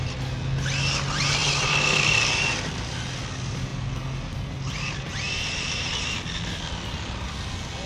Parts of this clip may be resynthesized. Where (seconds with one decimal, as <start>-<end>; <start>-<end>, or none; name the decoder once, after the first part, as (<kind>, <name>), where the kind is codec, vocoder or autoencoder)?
1.4-2.2 (vocoder, BigVGAN v2)